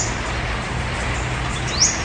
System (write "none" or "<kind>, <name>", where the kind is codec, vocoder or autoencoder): none